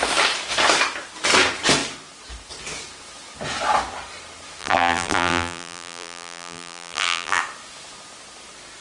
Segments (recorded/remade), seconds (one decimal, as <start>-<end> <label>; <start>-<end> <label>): 0.0-4.6 recorded; 4.6-7.4 remade; 7.4-8.8 recorded